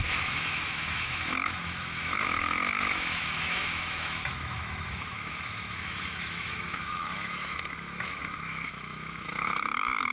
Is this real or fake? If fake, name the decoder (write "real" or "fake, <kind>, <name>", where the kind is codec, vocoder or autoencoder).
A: fake, autoencoder, DAC-VAE